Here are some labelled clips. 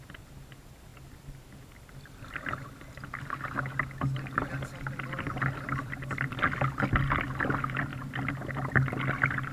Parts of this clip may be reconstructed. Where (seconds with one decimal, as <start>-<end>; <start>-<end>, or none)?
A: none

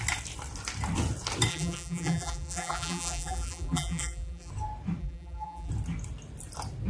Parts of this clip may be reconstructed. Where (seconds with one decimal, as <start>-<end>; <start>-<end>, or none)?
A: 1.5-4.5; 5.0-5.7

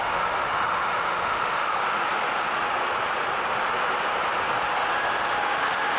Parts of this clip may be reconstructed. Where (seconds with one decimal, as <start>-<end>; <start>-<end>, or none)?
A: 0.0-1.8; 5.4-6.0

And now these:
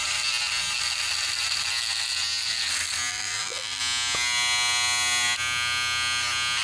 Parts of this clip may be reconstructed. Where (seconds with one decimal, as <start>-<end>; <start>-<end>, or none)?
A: 3.1-3.8

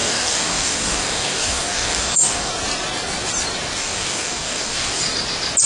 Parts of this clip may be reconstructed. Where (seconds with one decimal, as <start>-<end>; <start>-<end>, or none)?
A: 0.0-2.5; 3.8-5.0

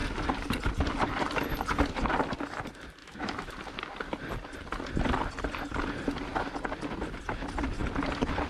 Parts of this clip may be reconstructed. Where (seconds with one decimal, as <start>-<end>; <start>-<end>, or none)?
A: 3.0-3.5

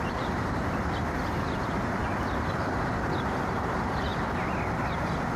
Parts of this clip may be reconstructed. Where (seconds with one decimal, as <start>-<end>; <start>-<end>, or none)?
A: 0.0-4.1; 4.9-5.4

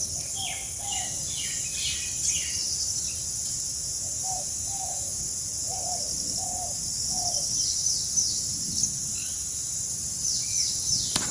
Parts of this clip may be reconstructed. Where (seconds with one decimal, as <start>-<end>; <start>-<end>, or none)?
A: none